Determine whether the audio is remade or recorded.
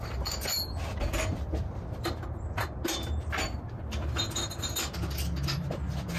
recorded